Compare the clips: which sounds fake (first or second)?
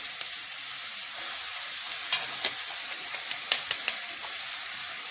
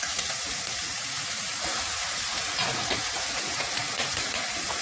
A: second